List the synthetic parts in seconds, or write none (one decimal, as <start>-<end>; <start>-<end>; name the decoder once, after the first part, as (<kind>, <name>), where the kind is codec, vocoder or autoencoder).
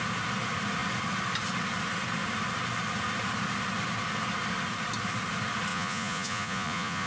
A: 5.7-7.1 (vocoder, Vocos)